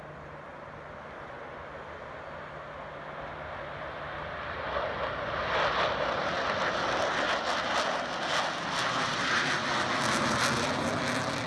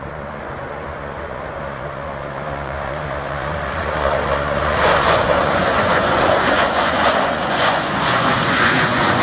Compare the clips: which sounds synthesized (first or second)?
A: second